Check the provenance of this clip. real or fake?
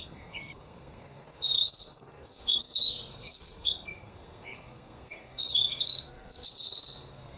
fake